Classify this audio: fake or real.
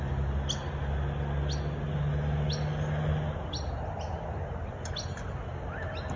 real